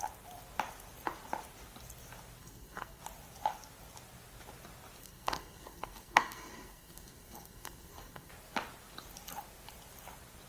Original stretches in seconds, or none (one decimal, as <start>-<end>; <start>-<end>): 0.0-2.4; 3.0-5.0; 8.3-10.5